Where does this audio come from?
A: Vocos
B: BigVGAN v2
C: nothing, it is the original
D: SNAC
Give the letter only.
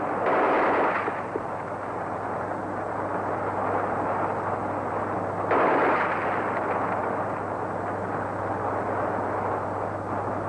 C